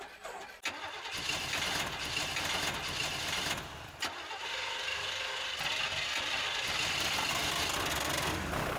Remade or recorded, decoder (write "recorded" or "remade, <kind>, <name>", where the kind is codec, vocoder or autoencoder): recorded